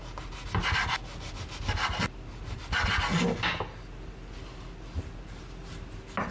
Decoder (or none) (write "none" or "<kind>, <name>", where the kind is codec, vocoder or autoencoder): none